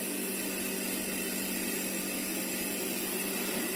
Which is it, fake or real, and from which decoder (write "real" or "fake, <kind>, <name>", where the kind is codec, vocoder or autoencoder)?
real